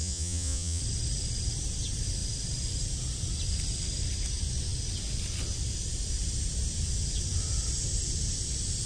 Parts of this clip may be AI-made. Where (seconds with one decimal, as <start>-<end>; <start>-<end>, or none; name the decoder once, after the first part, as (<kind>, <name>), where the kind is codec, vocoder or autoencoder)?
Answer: 0.0-0.8 (vocoder, Vocos)